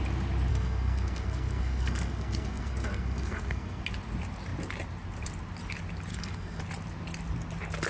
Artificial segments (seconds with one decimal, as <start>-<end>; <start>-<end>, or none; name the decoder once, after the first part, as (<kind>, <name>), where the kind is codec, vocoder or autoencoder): 0.5-3.8 (codec, SNAC); 6.1-6.6